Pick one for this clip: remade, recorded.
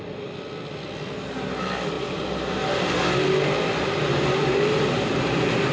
recorded